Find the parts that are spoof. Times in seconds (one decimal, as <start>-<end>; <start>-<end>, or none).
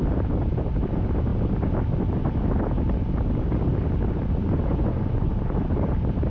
4.7-5.3